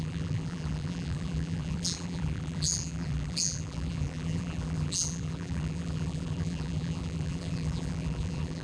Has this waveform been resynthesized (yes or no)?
yes